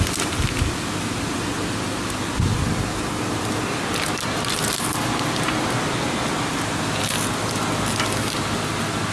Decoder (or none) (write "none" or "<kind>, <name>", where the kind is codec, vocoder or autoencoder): none